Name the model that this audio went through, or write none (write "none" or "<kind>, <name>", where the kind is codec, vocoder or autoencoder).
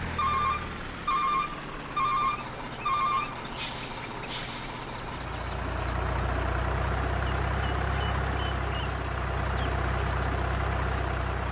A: none